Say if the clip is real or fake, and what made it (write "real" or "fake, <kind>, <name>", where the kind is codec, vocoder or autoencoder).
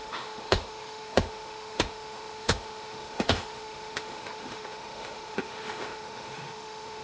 fake, autoencoder, DAC-VAE